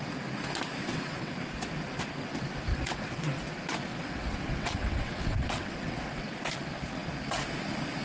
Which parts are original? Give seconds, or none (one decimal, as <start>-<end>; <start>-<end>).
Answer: 0.0-0.8; 1.3-2.7; 3.4-3.9; 6.2-8.0